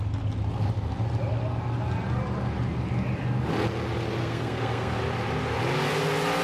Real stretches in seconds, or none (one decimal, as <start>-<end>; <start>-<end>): 0.0-4.2; 5.0-6.4